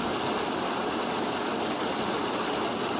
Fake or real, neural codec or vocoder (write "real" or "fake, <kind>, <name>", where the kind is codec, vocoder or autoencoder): real